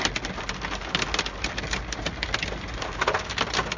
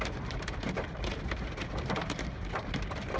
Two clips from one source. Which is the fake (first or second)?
second